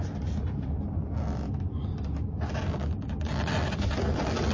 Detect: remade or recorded recorded